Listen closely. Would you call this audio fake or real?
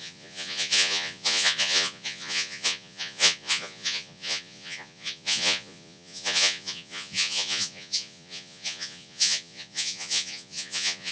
fake